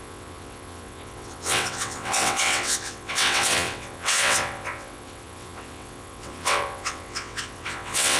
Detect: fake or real fake